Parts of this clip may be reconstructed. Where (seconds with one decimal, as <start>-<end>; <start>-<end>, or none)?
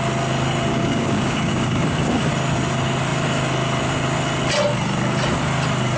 0.7-2.3